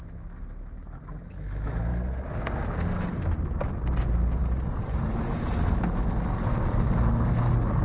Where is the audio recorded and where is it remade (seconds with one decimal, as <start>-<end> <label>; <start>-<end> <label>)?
0.0-7.8 recorded